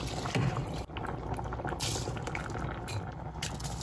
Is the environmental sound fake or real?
real